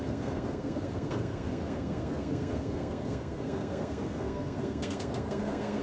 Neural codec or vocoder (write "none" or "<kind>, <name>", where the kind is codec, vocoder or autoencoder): codec, SNAC